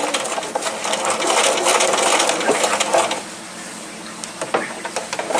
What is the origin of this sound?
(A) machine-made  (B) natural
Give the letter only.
B